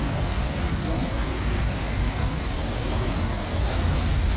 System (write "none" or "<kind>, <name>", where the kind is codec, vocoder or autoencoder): codec, DAC